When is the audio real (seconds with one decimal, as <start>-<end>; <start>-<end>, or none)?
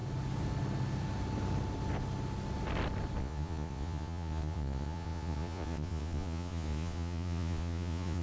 0.0-3.2